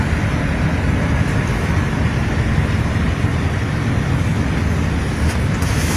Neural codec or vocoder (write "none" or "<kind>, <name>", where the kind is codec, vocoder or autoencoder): none